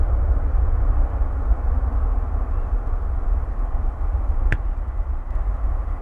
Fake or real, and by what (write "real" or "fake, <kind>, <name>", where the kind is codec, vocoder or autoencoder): real